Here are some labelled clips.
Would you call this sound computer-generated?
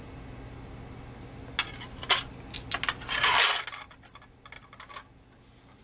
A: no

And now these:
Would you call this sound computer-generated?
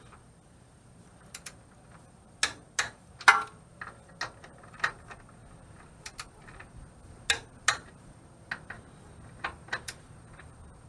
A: no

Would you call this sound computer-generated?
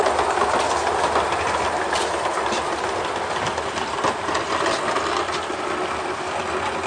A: no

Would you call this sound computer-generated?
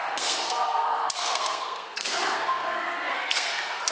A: yes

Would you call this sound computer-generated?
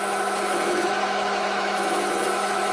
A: yes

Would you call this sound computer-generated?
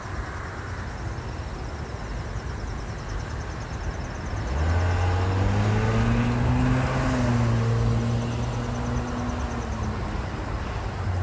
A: no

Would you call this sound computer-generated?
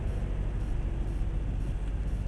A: no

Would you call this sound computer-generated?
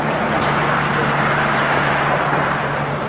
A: no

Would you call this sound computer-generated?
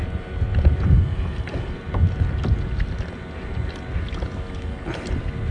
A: no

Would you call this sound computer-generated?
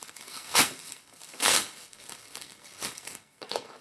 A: yes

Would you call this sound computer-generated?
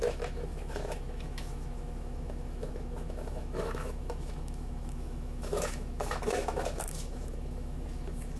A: yes